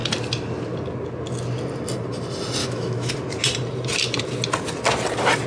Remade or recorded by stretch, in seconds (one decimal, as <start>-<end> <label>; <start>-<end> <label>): 0.0-2.6 recorded; 2.6-3.1 remade; 3.1-5.5 recorded